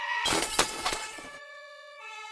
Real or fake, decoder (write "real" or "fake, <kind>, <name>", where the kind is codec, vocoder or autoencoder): fake, vocoder, Vocos